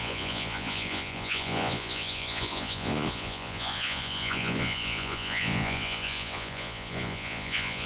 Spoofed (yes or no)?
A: yes